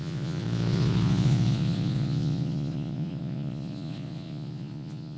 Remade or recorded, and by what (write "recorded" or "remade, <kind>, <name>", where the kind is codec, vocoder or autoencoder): remade, vocoder, Vocos